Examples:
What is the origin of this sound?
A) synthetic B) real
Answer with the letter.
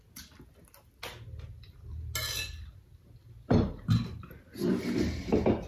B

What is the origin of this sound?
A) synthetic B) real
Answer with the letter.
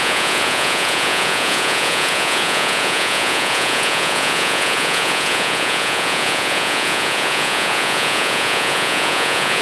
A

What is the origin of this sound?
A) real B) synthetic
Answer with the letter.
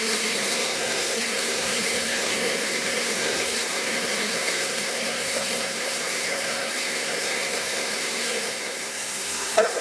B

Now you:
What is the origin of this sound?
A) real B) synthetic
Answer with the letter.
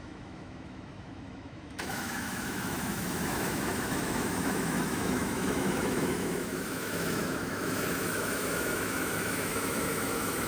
B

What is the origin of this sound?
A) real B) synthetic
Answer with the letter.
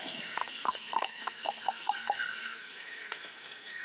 B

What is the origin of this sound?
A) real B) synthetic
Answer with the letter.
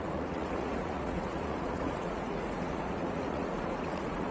B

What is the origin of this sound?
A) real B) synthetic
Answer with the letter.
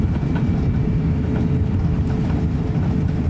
A